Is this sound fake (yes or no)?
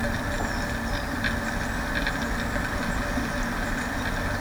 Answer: no